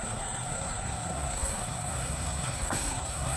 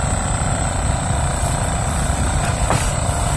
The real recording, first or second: second